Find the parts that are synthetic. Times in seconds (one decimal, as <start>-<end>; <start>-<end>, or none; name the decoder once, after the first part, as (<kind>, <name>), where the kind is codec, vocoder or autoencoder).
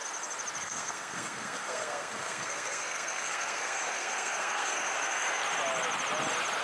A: 0.6-5.4 (codec, SNAC)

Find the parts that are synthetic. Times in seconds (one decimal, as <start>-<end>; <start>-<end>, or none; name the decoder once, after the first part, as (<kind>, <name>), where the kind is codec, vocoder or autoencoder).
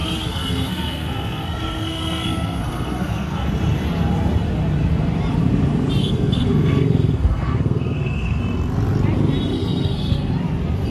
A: 0.0-3.5 (codec, SNAC); 6.0-8.4; 9.5-10.3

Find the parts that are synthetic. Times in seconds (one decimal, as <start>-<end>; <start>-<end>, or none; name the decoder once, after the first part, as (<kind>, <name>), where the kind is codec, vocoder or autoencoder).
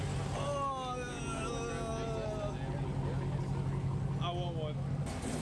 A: none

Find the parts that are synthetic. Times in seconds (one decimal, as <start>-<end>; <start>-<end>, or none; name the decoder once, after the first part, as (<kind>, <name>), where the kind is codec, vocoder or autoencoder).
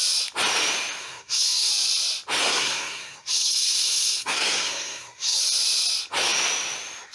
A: 1.0-1.7 (codec, SNAC); 2.4-5.4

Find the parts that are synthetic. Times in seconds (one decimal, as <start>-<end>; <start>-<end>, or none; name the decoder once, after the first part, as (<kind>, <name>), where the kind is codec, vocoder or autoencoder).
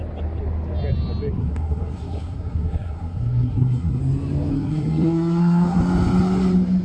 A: 1.4-4.0 (codec, SNAC); 4.5-5.8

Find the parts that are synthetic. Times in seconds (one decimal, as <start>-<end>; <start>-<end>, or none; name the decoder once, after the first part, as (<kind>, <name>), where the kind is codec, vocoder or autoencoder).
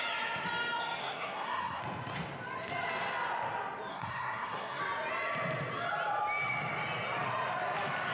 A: 1.0-1.8 (codec, SNAC); 3.9-4.8